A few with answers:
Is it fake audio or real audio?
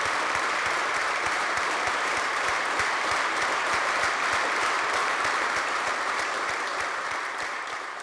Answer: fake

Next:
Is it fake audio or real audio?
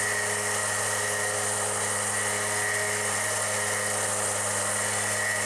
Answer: real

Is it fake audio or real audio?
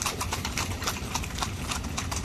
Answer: fake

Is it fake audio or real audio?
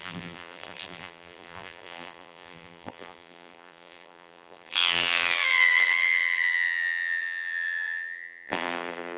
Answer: fake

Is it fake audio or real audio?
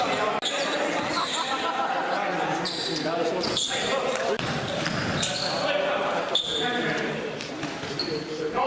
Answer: fake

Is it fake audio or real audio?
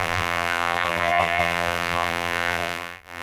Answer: fake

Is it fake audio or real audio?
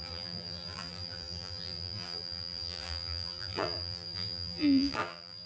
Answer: fake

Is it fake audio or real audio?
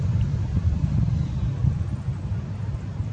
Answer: fake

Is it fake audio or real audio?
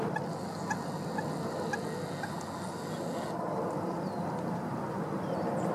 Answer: real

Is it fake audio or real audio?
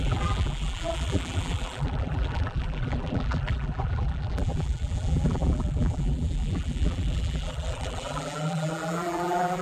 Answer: fake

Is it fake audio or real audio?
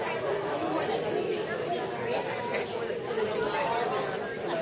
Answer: real